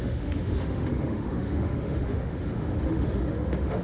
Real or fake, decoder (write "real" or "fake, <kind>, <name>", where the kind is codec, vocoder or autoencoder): fake, autoencoder, DAC-VAE